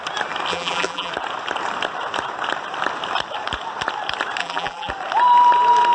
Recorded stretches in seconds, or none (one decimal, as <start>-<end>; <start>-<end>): 0.0-0.5; 1.1-4.4; 4.9-5.9